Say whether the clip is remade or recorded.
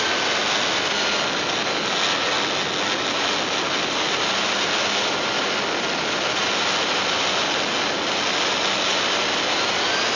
recorded